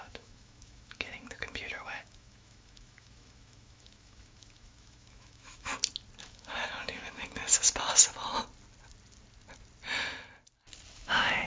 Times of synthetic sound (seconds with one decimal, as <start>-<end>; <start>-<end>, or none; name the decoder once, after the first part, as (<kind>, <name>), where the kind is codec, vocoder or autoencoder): 0.0-5.7 (autoencoder, DAC-VAE); 6.2-7.4; 10.9-11.5

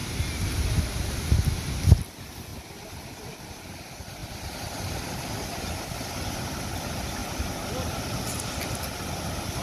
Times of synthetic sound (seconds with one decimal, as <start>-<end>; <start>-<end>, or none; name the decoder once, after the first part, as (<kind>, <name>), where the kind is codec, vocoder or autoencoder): none

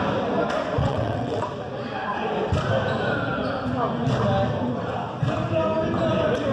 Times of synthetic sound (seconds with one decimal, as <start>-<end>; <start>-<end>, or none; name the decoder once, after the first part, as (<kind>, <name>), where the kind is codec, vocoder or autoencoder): 0.8-1.5 (vocoder, WaveNeXt)

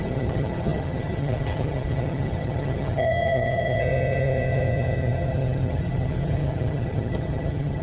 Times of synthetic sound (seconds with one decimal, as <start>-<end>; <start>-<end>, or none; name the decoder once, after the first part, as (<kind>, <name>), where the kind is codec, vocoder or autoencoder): 0.0-7.8 (vocoder, HiFi-GAN)

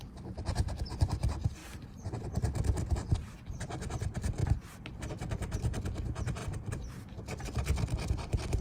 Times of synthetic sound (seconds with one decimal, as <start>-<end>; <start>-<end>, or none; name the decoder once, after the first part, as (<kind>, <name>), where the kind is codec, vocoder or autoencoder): 1.6-2.1 (vocoder, BigVGAN v2); 6.4-7.4

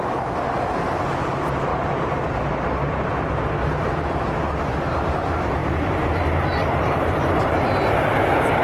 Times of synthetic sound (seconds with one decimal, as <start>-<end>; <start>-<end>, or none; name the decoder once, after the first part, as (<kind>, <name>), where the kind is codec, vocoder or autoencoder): 1.7-2.4 (vocoder, BigVGAN v2); 5.6-7.7